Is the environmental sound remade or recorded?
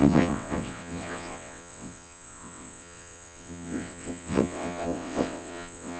remade